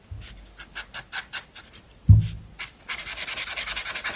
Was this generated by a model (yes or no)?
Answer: no